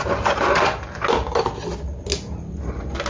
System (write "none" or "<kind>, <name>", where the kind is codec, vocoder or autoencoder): none